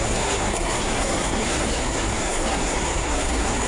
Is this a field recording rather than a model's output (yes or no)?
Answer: no